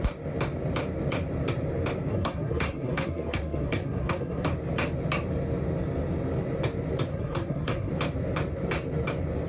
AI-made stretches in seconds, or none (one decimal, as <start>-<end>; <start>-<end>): 2.1-4.5; 7.1-7.9